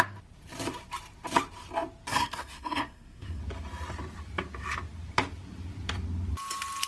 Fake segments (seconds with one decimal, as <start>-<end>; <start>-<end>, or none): 2.1-3.4